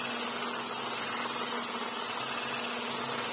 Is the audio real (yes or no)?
yes